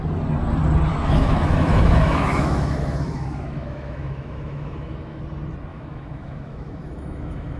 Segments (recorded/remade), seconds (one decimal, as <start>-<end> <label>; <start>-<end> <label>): 0.0-0.9 recorded; 0.9-5.2 remade; 5.2-5.7 recorded; 5.7-7.6 remade